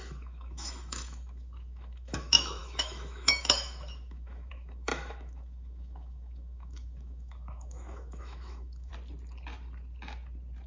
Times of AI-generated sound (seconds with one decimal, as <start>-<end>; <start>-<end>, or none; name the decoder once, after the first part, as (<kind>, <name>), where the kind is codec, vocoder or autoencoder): 0.0-8.9 (autoencoder, DAC-VAE)